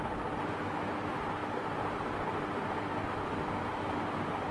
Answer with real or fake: real